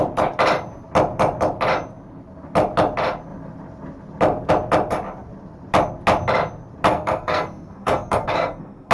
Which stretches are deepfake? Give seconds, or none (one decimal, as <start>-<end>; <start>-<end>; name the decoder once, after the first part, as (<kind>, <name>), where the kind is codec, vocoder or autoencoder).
6.9-8.9 (codec, SNAC)